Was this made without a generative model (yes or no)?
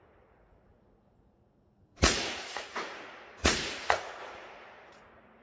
no